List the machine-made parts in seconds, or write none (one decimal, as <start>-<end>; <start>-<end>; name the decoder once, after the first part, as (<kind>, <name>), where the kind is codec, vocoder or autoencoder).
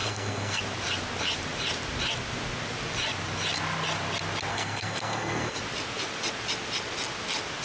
0.0-0.6 (codec, SNAC); 4.5-5.6